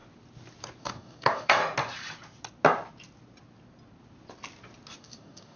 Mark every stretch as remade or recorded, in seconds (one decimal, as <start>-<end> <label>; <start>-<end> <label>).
0.0-0.8 recorded; 0.8-1.6 remade; 1.6-5.0 recorded; 5.0-5.6 remade